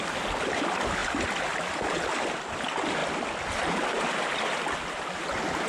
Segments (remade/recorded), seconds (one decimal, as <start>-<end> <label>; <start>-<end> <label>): 0.0-1.0 recorded; 1.0-2.0 remade; 2.0-5.7 recorded